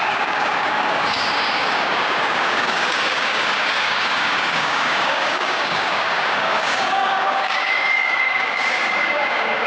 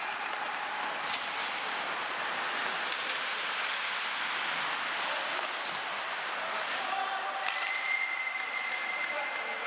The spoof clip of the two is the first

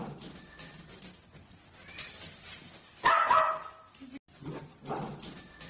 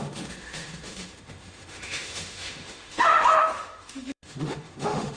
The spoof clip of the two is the second